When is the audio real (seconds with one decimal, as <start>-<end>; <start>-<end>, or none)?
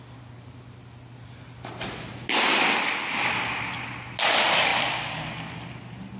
0.0-6.2